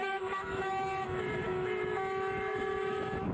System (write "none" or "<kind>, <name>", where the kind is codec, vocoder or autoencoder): autoencoder, DAC-VAE